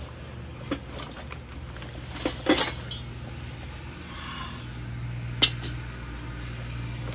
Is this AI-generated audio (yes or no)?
no